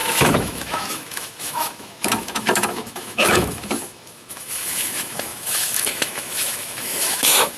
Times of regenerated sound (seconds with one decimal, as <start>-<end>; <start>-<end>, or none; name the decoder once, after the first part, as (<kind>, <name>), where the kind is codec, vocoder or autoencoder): 0.0-7.6 (autoencoder, DAC-VAE)